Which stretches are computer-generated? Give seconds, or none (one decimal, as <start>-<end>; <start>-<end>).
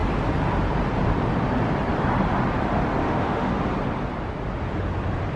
3.0-3.5